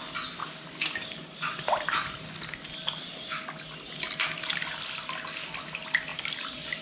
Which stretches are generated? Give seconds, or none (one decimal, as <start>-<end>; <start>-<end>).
none